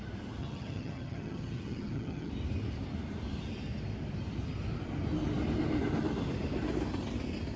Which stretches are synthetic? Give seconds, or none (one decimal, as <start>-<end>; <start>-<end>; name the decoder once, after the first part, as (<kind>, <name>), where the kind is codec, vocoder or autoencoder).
0.4-2.3 (vocoder, HiFi-GAN)